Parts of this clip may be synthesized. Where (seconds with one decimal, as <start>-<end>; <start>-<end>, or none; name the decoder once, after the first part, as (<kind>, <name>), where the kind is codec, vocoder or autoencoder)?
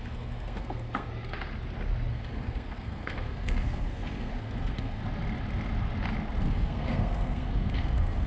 0.0-1.1 (codec, SNAC); 2.1-5.0; 6.4-8.3